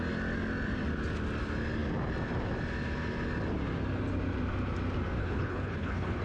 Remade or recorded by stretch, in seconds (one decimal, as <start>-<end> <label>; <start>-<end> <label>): 0.0-5.2 recorded; 5.2-6.2 remade